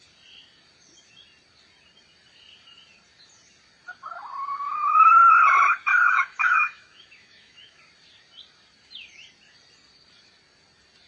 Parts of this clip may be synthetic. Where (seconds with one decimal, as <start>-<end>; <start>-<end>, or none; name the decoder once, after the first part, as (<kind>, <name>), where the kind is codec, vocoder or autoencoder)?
4.5-5.1 (autoencoder, DAC-VAE); 5.9-7.8